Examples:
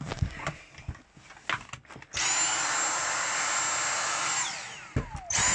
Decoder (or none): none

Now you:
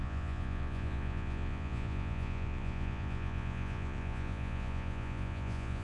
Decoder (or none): vocoder, Vocos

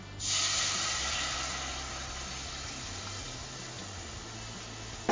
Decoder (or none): none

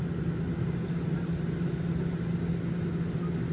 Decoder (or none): none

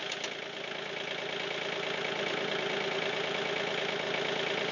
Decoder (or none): none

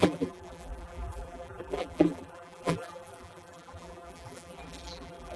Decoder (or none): vocoder, BigVGAN v2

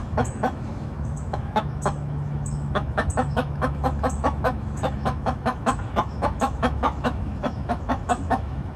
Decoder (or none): autoencoder, DAC-VAE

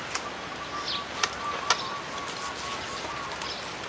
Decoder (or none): none